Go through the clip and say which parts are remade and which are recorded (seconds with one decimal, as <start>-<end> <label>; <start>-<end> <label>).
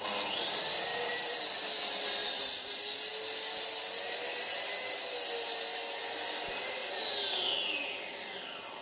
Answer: 0.0-0.9 recorded; 0.9-1.4 remade; 1.4-2.2 recorded; 2.2-2.7 remade; 2.7-8.8 recorded